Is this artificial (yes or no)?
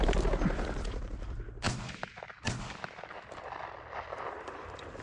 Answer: no